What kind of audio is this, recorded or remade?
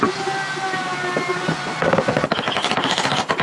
recorded